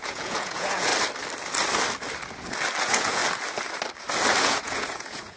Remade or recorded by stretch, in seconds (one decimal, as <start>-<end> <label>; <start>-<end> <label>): 0.0-0.9 remade; 0.9-2.8 recorded; 2.8-3.2 remade; 3.2-4.4 recorded; 4.4-5.4 remade